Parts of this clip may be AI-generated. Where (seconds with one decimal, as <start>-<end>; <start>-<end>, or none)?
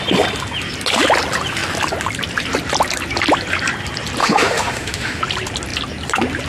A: 4.2-5.2